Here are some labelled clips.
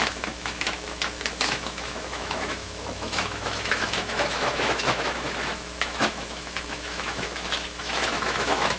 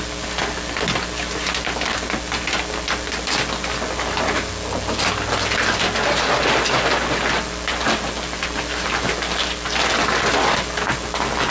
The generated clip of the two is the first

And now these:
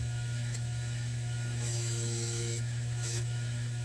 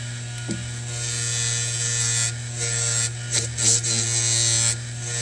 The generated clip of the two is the first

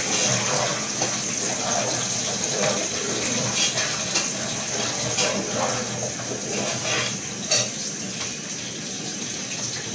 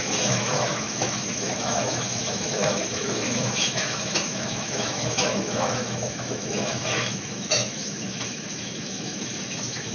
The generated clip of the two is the second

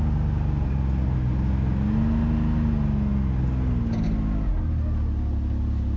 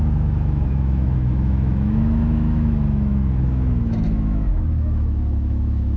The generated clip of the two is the second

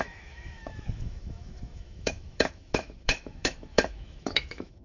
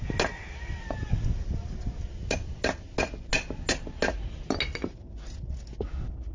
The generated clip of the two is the first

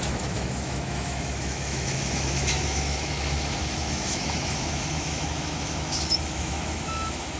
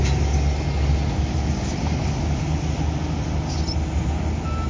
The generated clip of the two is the first